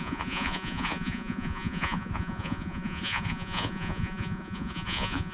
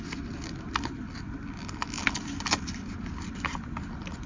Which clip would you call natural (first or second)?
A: second